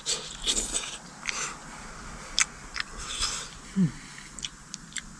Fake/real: real